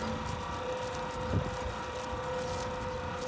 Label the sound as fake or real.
real